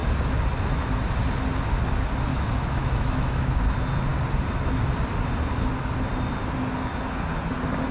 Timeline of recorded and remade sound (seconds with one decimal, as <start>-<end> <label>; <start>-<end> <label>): 0.0-2.3 recorded; 2.3-3.5 remade; 3.5-7.9 recorded